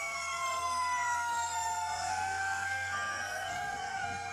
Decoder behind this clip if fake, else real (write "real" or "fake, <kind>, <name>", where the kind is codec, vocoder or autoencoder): fake, codec, SNAC